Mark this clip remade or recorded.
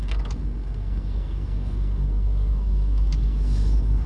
remade